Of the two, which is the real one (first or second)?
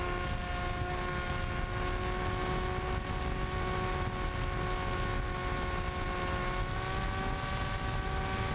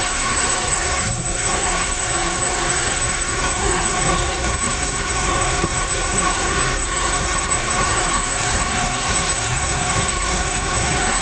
first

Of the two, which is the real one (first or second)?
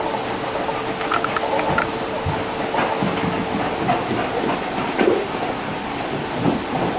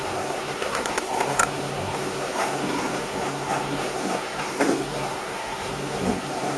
first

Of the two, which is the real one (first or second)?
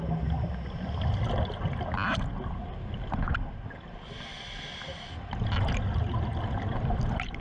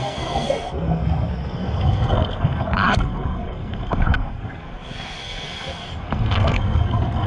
first